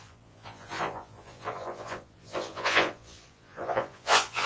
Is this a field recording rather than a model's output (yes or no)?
no